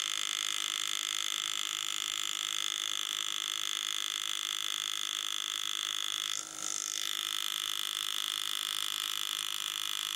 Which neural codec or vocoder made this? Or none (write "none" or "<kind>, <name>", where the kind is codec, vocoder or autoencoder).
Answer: none